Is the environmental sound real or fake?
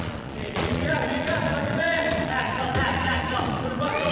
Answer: fake